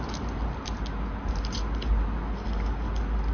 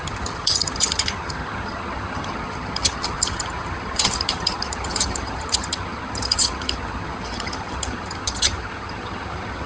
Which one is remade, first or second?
second